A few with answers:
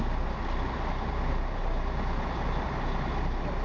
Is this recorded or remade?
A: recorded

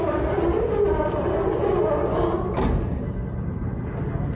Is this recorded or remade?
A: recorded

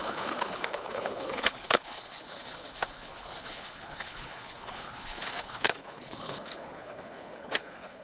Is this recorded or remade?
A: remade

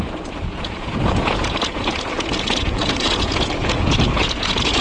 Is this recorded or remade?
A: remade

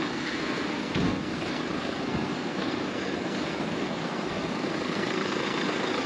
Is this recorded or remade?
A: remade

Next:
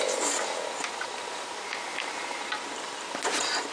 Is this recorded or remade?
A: recorded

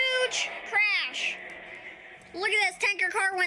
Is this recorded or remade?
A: recorded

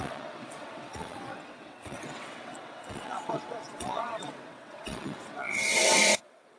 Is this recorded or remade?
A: remade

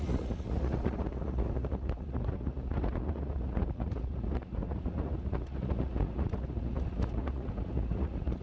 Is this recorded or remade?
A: remade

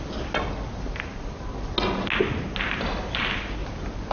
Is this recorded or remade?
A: recorded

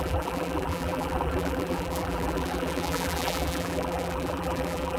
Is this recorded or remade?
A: remade